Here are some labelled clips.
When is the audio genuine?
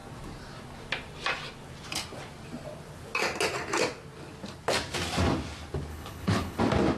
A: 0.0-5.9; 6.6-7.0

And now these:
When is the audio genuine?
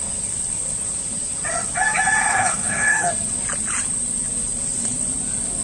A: 0.0-2.3; 3.1-5.6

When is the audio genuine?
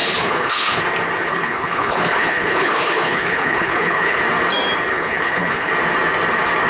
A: 0.8-1.3; 4.2-4.9; 5.7-6.7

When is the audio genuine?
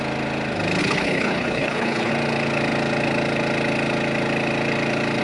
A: 0.0-0.8; 2.1-5.2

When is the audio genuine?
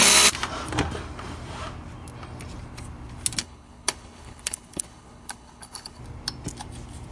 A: 0.0-3.4; 6.0-7.1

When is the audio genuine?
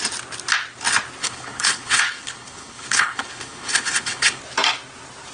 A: 0.0-1.2; 4.4-5.3